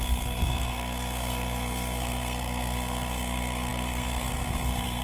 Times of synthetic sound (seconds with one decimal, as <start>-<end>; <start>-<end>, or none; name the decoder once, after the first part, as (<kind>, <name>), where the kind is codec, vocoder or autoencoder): 0.0-5.0 (codec, SNAC)